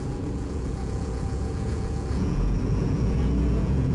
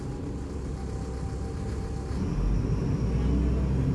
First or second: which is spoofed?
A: first